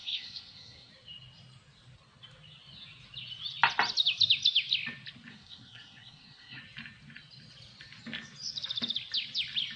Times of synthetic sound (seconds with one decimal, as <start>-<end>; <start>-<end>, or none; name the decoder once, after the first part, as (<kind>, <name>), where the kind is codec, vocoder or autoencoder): 0.0-0.9 (codec, SNAC); 5.3-6.6